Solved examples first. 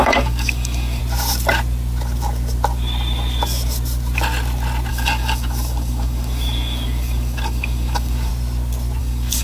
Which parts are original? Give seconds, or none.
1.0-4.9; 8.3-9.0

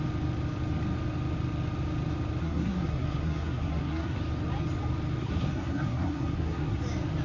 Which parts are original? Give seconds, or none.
0.0-2.4; 4.2-5.2; 6.8-7.2

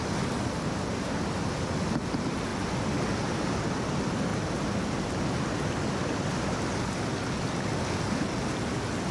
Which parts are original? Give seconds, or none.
0.0-9.1

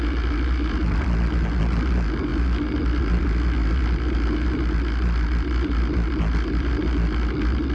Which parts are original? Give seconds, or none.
0.0-7.7

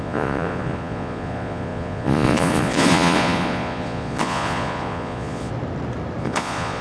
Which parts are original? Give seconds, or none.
5.5-6.2

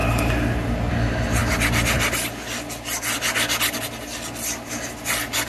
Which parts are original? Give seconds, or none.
0.0-5.5

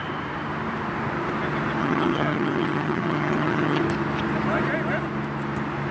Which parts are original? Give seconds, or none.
0.0-1.8; 3.8-5.9

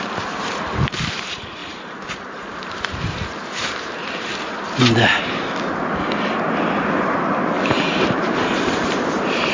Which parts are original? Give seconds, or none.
1.6-2.1; 4.3-8.3